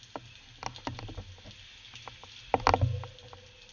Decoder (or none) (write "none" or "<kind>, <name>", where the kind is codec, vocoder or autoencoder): none